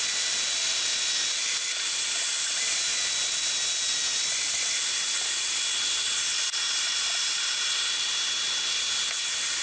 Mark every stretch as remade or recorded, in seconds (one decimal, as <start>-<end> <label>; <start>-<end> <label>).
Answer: 0.0-9.6 recorded